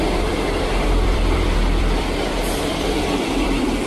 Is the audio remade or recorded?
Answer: remade